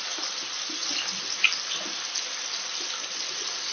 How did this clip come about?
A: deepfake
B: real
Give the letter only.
B